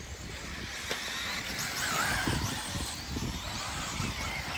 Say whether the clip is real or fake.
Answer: real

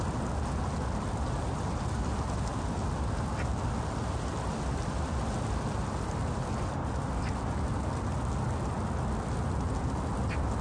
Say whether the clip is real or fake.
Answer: real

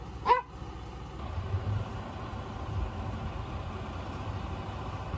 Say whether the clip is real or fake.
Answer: real